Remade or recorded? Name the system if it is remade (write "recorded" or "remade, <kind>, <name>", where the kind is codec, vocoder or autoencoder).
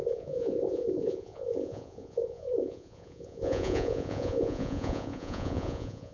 remade, vocoder, Vocos